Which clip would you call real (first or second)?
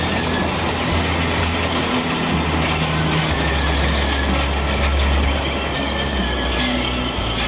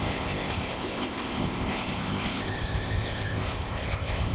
first